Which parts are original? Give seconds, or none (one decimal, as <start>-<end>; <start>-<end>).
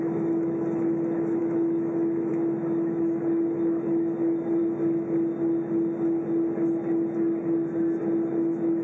4.6-8.3